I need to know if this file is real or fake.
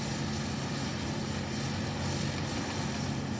real